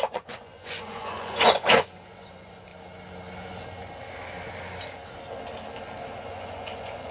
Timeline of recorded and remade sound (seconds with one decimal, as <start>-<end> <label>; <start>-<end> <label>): 0.0-2.7 remade; 2.7-6.2 recorded; 6.2-7.1 remade